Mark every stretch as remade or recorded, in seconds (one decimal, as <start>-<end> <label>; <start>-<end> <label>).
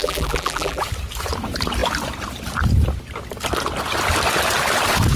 0.0-0.8 remade; 0.8-5.2 recorded